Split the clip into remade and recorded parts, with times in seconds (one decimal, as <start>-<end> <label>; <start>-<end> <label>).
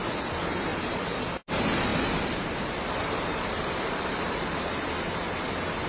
0.0-0.7 recorded; 0.7-1.3 remade; 1.3-1.9 recorded; 1.9-4.7 remade; 4.7-5.9 recorded